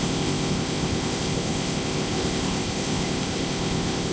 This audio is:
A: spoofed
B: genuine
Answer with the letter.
A